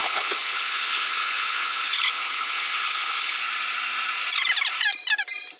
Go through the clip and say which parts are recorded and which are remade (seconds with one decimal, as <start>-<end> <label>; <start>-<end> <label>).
0.0-3.4 remade; 3.4-5.6 recorded